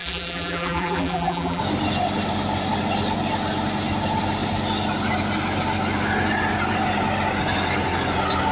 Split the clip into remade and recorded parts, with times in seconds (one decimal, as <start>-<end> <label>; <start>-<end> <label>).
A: 0.0-1.6 remade; 1.6-8.5 recorded